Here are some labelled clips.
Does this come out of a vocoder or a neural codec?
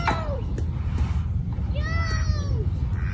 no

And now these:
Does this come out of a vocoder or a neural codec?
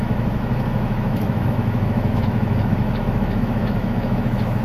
yes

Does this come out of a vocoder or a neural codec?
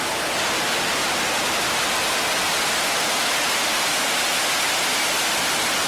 no